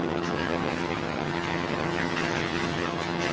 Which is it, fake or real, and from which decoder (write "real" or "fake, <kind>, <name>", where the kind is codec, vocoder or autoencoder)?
fake, vocoder, HiFi-GAN